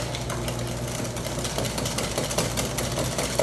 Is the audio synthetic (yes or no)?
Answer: no